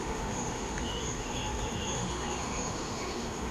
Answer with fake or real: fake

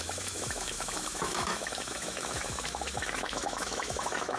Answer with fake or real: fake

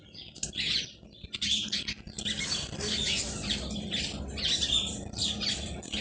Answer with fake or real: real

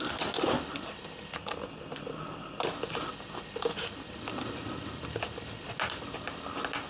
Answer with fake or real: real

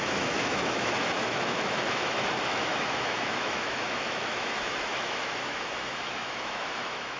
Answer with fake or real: fake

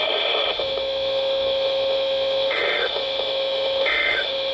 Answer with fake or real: fake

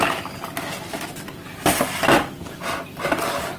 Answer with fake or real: real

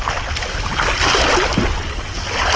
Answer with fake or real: real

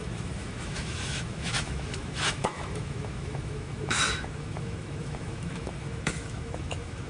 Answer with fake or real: fake